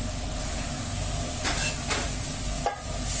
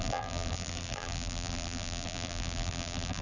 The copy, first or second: second